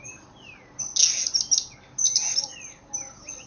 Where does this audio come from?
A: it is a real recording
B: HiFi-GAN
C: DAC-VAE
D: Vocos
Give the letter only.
A